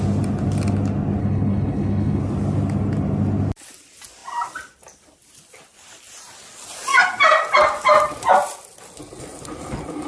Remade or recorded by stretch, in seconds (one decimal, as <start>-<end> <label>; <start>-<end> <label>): 0.0-1.2 recorded; 1.2-2.2 remade; 2.2-10.1 recorded